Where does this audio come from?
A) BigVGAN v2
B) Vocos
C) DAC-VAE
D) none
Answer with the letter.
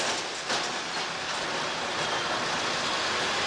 D